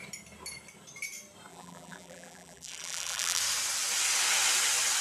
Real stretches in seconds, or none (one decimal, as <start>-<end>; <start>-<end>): 0.0-1.5; 3.4-5.0